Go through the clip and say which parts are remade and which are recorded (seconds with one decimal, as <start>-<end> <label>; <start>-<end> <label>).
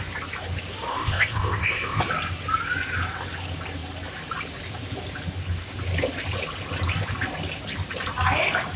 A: 0.0-0.9 recorded; 0.9-2.0 remade; 2.0-8.8 recorded